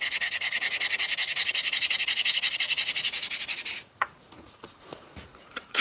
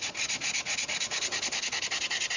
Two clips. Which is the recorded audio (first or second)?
second